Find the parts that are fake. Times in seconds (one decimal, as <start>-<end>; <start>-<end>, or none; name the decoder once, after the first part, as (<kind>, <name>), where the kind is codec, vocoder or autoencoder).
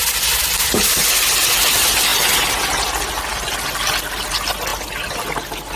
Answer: none